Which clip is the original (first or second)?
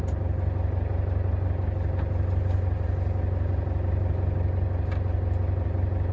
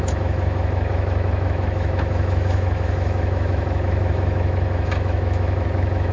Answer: first